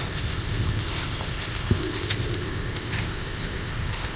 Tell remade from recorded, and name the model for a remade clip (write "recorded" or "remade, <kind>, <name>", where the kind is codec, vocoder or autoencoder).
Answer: remade, codec, ZipCodec